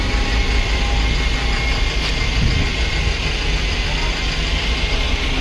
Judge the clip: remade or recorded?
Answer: recorded